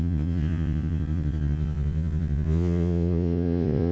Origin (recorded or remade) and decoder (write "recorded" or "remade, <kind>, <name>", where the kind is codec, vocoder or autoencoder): remade, vocoder, Vocos